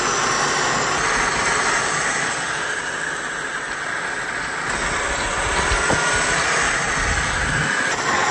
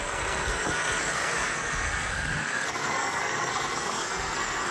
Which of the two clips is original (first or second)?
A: first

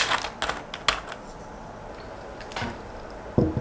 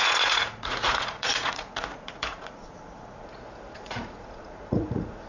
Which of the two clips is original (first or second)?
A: first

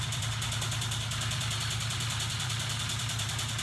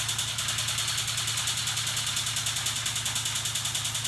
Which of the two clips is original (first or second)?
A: second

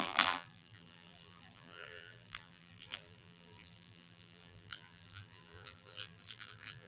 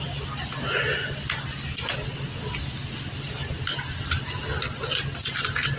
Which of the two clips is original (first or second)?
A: second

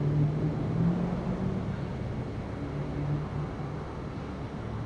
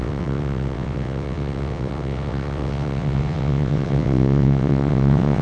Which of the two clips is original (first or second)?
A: first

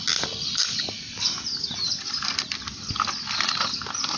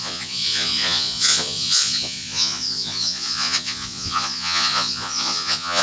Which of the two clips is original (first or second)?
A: first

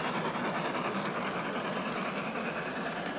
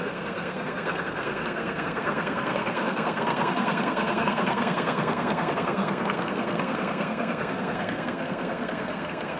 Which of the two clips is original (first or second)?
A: first